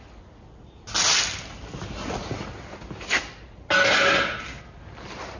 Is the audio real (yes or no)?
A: yes